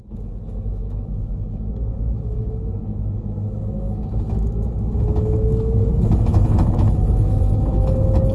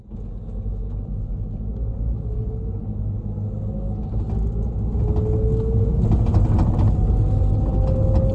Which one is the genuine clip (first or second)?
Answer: second